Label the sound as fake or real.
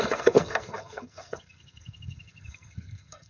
fake